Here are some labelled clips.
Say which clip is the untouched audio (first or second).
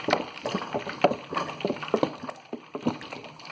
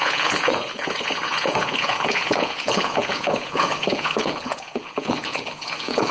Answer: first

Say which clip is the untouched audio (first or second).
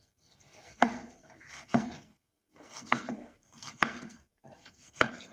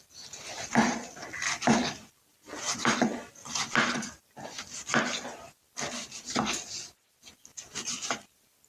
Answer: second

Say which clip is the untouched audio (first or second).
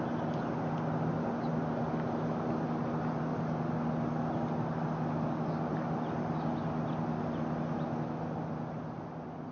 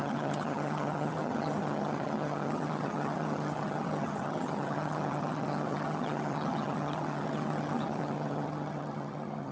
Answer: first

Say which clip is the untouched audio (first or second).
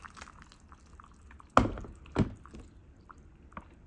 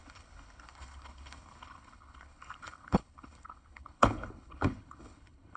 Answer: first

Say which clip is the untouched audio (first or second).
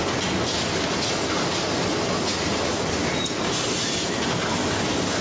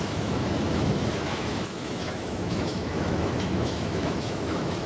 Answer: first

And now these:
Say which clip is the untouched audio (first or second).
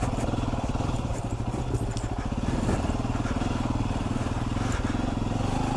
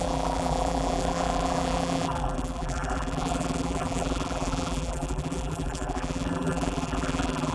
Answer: first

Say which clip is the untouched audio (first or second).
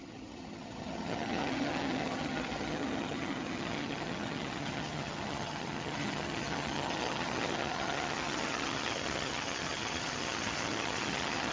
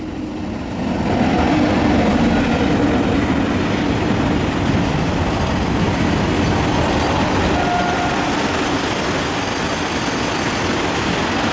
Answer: second